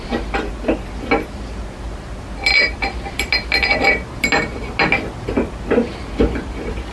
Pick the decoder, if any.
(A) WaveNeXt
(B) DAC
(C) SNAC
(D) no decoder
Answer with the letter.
D